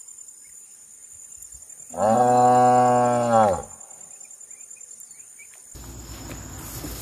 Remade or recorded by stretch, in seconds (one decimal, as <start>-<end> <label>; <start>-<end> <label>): 0.0-7.0 recorded